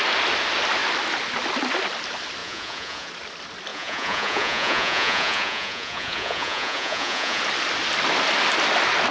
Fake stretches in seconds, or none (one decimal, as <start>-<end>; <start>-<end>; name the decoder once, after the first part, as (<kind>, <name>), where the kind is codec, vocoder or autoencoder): 2.4-3.1 (vocoder, Vocos); 3.7-7.4